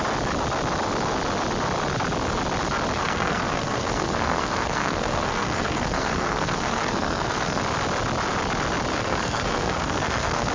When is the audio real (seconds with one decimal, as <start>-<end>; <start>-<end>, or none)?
0.0-3.0; 7.6-8.9